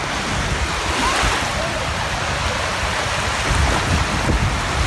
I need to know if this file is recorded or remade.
recorded